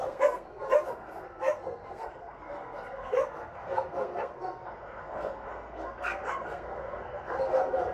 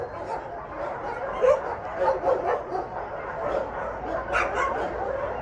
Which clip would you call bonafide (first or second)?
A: second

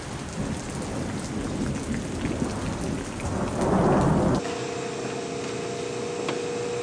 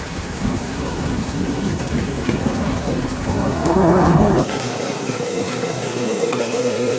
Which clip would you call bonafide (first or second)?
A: first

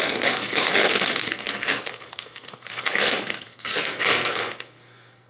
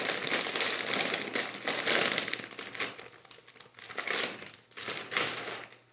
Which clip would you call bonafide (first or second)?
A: second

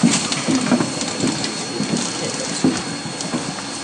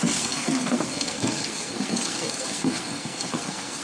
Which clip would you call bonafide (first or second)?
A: first